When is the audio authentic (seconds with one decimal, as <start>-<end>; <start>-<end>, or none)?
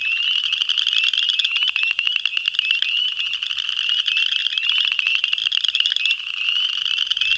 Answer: 0.0-7.4